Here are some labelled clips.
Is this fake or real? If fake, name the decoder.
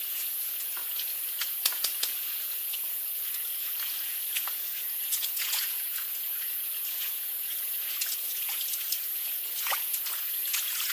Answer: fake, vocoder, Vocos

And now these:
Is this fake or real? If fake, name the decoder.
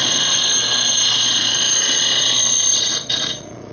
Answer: fake, vocoder, Vocos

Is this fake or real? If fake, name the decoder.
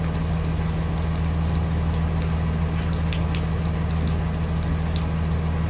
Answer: real